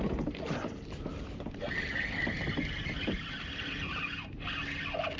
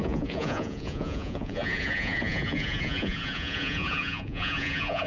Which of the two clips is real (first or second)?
first